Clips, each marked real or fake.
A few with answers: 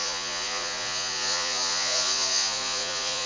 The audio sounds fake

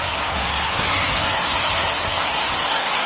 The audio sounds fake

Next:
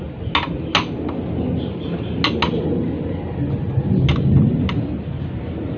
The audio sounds real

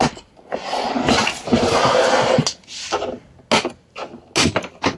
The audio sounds real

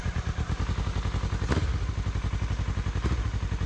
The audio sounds real